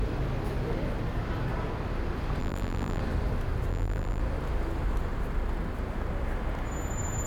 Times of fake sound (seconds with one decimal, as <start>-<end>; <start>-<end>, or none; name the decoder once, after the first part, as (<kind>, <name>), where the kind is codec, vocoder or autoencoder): 2.4-3.0 (vocoder, BigVGAN v2); 3.7-4.2